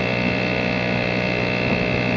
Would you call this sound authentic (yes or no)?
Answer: yes